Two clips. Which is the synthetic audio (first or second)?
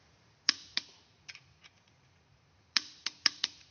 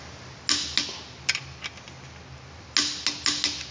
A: first